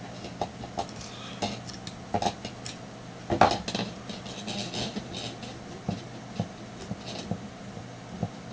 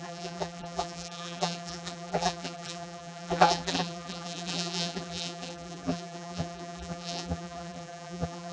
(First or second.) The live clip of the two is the first